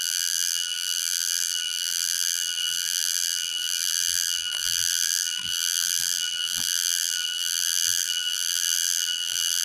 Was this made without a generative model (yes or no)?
no